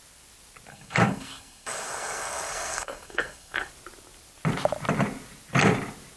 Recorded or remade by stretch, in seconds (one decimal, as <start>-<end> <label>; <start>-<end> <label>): 0.0-0.7 recorded; 0.7-3.7 remade; 3.7-6.2 recorded